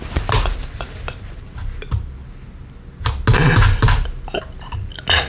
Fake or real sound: real